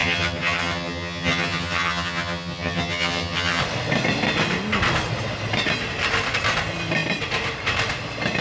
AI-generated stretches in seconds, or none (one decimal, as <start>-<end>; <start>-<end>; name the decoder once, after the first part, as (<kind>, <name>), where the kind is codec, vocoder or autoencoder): 0.0-3.6 (vocoder, HiFi-GAN)